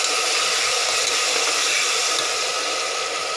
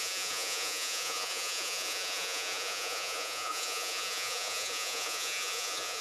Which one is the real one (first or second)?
first